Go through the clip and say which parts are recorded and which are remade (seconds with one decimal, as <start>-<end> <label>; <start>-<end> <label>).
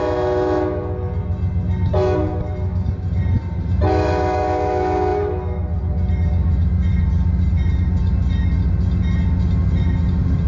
0.0-10.5 recorded